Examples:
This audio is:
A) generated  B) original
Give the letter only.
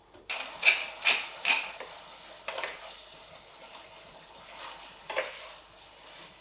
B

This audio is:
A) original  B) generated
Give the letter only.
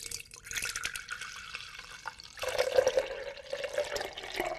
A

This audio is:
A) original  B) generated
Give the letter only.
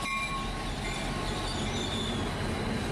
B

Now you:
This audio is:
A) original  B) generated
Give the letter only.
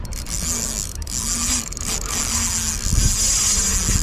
A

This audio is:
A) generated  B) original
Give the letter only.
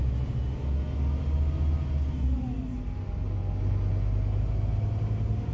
B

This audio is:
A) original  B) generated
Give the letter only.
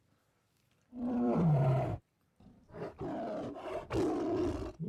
B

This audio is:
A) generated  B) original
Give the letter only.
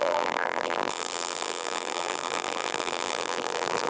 A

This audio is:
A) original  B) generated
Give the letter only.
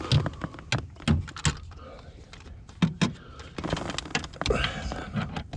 A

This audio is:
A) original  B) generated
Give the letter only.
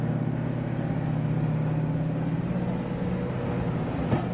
A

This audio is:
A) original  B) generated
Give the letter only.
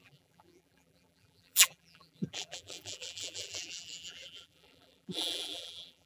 B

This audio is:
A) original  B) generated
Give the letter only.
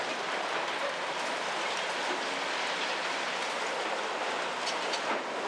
A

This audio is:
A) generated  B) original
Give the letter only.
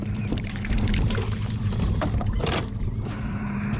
A